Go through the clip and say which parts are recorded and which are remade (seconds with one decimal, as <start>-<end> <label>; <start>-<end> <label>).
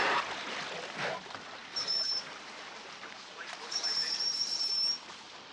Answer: 0.0-1.6 recorded; 1.6-4.9 remade; 4.9-5.5 recorded